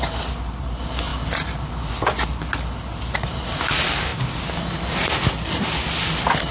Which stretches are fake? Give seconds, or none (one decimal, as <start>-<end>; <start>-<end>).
none